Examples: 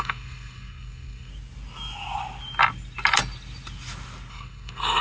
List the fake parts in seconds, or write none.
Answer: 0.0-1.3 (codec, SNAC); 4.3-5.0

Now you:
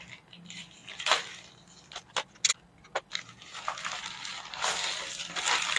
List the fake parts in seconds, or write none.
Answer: none

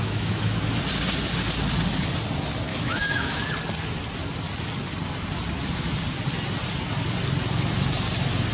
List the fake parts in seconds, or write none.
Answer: 0.0-0.6 (autoencoder, DAC-VAE); 2.7-3.4

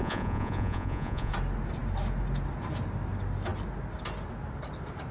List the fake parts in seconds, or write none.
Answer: 0.0-1.3 (vocoder, Vocos)

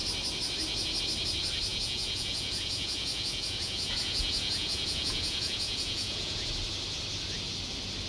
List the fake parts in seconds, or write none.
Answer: 1.7-6.5 (vocoder, Vocos)

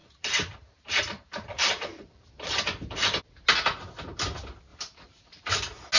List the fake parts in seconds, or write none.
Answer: 0.0-2.6 (vocoder, BigVGAN v2); 4.7-5.5